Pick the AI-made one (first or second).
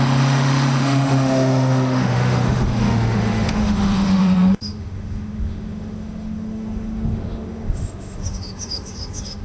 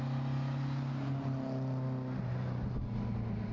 first